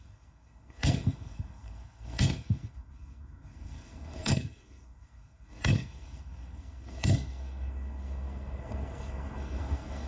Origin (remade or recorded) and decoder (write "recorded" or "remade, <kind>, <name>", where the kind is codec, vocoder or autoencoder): remade, codec, SNAC